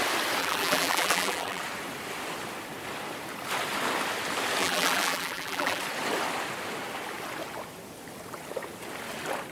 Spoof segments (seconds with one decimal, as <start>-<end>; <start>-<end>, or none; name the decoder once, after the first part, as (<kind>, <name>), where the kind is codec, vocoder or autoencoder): 0.4-1.6 (vocoder, BigVGAN v2); 4.6-5.8